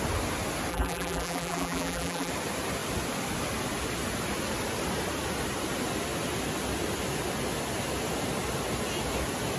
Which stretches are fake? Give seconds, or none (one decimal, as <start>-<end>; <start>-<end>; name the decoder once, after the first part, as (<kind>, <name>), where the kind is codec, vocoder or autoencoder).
0.7-2.3 (vocoder, BigVGAN v2)